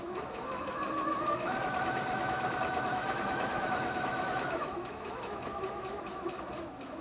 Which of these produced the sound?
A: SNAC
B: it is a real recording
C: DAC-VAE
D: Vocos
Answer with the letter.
C